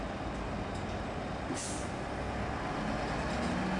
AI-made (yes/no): no